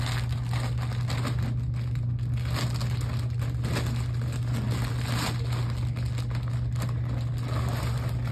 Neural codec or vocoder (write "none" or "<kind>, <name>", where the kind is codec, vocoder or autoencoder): none